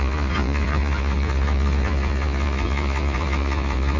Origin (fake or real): fake